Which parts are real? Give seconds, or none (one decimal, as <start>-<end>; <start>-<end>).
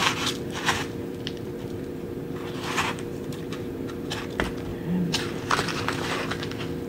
3.9-4.7; 6.1-6.9